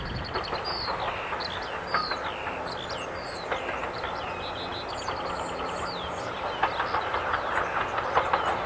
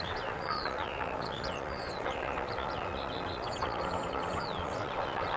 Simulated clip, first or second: second